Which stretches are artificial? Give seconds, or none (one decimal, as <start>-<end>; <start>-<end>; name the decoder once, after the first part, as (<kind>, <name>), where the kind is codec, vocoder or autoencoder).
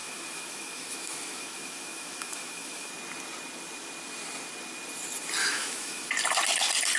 0.0-2.9 (autoencoder, DAC-VAE); 5.4-6.1